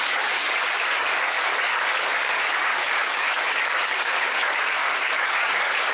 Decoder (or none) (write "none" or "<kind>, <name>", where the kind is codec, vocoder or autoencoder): codec, DAC